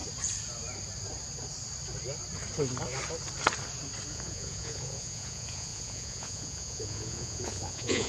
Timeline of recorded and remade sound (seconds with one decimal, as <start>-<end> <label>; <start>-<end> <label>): 0.0-4.1 recorded; 4.1-8.1 remade